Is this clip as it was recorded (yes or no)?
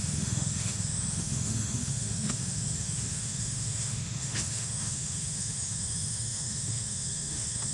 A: no